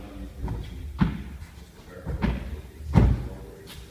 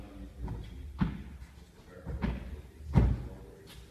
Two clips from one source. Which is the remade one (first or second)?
first